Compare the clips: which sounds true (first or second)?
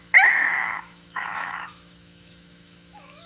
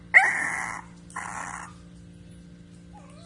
second